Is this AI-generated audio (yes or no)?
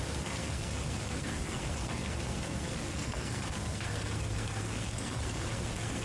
yes